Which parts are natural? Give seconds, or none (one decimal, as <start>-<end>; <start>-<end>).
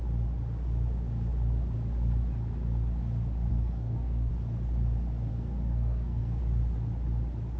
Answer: 0.0-3.5; 4.3-5.3; 6.4-7.6